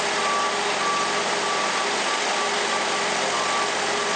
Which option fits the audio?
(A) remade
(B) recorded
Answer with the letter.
B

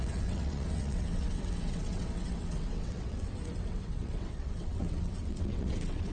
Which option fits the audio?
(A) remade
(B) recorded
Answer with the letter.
A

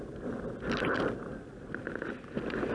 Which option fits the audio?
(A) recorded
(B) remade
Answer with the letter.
A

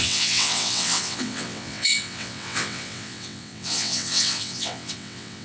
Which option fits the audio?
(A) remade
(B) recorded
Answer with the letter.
A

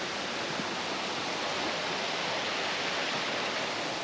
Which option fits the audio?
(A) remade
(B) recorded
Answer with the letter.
B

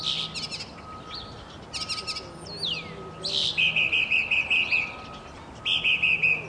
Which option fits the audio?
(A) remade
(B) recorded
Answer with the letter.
B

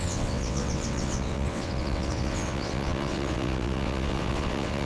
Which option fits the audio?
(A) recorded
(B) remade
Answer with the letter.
B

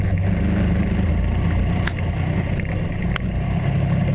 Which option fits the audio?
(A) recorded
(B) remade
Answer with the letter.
A